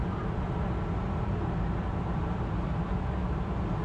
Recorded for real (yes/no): no